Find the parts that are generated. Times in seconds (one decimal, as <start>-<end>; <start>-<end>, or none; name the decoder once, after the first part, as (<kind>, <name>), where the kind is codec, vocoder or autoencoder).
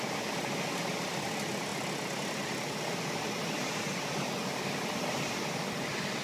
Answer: none